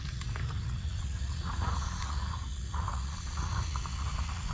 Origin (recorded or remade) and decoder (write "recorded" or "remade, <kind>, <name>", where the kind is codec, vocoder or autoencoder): remade, vocoder, Vocos